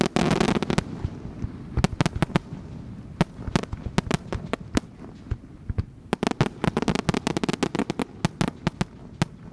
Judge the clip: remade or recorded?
recorded